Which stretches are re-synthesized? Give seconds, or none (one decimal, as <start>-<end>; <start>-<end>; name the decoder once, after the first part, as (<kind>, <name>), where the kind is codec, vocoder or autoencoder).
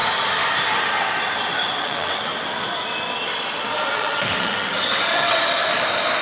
1.7-2.3 (vocoder, WaveNeXt); 3.9-5.4